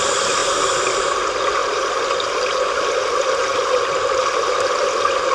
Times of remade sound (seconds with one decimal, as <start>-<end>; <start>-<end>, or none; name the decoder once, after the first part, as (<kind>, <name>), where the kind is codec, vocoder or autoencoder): none